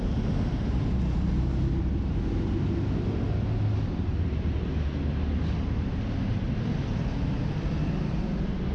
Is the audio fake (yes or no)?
no